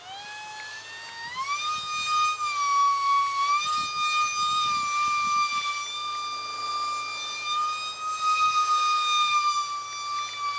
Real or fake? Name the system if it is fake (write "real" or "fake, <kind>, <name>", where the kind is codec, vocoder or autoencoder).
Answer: real